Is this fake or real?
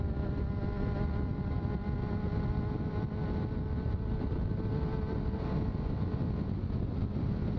real